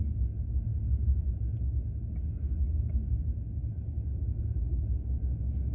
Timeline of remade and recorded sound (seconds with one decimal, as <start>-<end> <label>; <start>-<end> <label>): 0.0-5.7 recorded